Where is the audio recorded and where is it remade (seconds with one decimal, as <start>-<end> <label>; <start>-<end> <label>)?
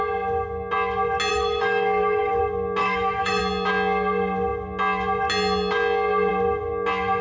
0.0-1.3 recorded; 1.3-2.4 remade; 2.4-2.8 recorded; 2.8-3.4 remade; 3.4-7.2 recorded